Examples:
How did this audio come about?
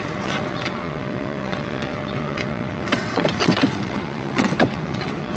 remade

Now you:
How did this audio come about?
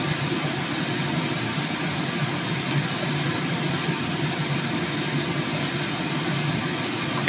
recorded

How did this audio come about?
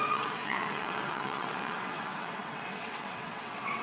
remade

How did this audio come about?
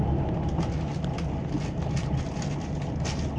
recorded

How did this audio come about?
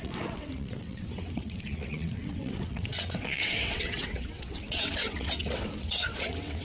remade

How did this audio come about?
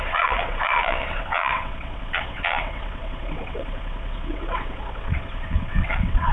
remade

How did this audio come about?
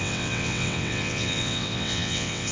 remade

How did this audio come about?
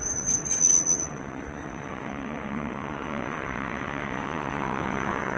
remade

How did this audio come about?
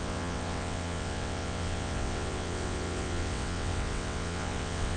remade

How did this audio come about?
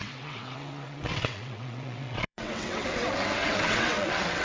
remade